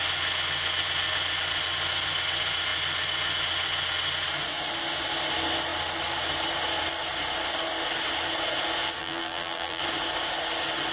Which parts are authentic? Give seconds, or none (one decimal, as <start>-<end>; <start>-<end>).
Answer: 0.0-9.0; 9.8-10.9